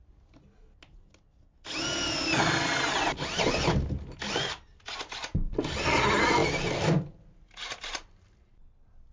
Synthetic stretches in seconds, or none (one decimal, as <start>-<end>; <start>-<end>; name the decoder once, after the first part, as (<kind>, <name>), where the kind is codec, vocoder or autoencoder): none